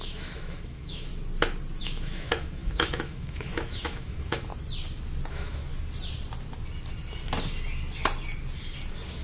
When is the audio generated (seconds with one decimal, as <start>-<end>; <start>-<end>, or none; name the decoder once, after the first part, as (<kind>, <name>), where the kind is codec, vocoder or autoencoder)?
0.0-1.1 (autoencoder, DAC-VAE); 1.8-4.5; 5.3-5.7